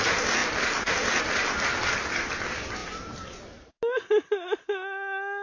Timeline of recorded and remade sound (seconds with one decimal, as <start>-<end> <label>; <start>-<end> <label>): 0.0-0.4 recorded; 0.4-1.2 remade; 1.2-2.8 recorded; 2.8-3.7 remade; 3.7-5.4 recorded